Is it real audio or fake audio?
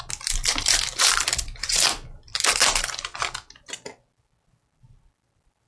real